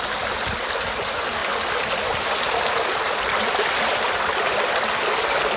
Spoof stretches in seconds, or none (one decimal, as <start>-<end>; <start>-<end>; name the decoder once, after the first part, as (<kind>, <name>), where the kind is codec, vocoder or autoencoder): none